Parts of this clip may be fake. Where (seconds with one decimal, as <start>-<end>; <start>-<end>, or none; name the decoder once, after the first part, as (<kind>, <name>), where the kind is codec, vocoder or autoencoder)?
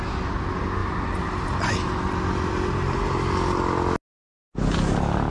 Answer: none